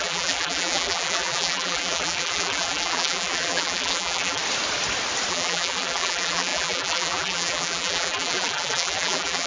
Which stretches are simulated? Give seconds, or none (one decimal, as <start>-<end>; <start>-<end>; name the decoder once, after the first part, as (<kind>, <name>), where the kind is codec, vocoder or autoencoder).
0.0-4.4 (vocoder, BigVGAN v2); 5.3-9.5